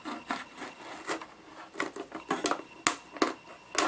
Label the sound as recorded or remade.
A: recorded